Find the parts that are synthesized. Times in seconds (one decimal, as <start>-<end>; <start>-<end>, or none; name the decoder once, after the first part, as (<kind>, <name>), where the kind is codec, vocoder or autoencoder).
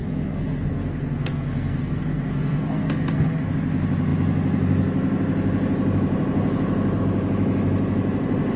0.0-3.5 (codec, SNAC)